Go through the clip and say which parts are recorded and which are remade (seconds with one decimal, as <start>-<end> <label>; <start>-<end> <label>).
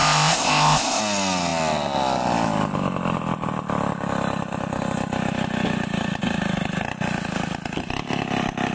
0.0-1.0 remade; 1.0-8.7 recorded